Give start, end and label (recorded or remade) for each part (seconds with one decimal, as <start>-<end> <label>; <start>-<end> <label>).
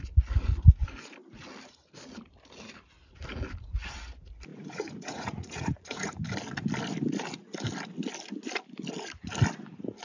0.0-4.5 recorded; 4.5-6.2 remade; 6.2-10.0 recorded